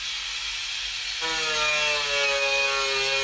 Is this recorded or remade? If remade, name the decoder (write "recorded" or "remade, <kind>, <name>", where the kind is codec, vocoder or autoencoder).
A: recorded